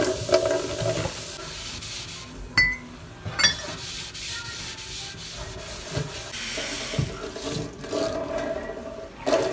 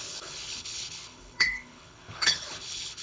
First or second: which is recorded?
first